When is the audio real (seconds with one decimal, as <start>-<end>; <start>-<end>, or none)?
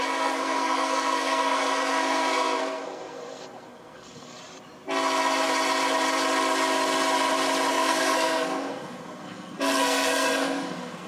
4.4-7.7